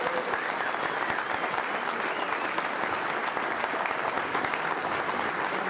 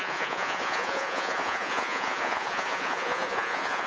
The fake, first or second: second